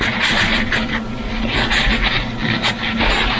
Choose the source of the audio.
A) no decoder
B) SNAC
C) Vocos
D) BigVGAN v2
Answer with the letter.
A